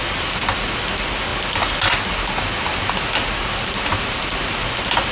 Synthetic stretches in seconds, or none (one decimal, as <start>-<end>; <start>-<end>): none